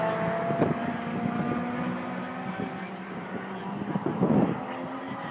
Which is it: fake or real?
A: real